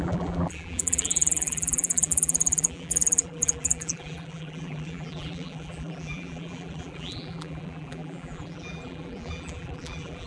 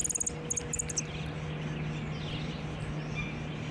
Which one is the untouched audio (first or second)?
second